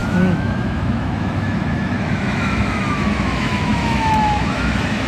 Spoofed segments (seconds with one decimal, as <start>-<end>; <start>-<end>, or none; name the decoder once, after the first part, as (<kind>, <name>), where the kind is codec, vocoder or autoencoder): 0.0-5.1 (autoencoder, DAC-VAE)

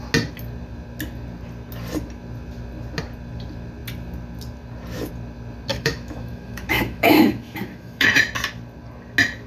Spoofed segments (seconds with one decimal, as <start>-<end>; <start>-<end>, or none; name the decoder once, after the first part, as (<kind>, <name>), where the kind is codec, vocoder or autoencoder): 5.7-8.2 (autoencoder, DAC-VAE)

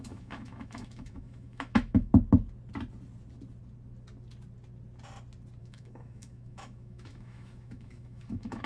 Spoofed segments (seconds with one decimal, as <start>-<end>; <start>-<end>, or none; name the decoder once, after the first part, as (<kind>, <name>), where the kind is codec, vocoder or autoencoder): 0.0-2.1 (autoencoder, DAC-VAE); 5.6-8.7

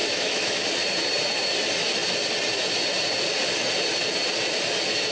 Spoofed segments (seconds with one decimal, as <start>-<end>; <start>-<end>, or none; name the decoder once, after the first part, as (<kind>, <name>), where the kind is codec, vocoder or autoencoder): 0.0-0.6 (autoencoder, DAC-VAE)

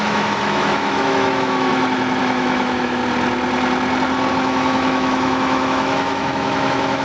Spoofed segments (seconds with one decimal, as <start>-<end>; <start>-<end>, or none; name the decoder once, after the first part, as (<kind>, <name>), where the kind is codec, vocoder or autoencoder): 0.0-1.7 (autoencoder, DAC-VAE); 2.2-3.0; 4.3-7.0

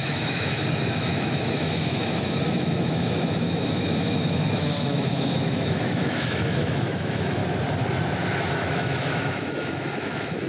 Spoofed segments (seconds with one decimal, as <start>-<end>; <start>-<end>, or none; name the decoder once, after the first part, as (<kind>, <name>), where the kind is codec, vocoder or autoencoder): 0.0-7.4 (autoencoder, DAC-VAE); 8.5-10.5

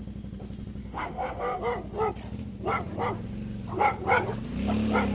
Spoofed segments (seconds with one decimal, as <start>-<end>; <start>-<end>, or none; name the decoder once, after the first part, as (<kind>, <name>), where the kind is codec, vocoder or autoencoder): 0.8-1.6 (autoencoder, DAC-VAE)

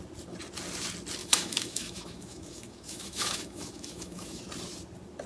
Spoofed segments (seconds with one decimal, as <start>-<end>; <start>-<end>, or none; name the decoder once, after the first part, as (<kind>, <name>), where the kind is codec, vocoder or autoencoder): 1.2-4.4 (autoencoder, DAC-VAE)